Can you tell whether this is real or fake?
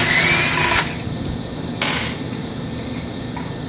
real